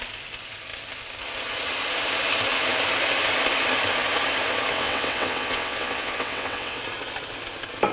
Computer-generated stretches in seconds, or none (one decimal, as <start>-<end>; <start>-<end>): 4.7-6.8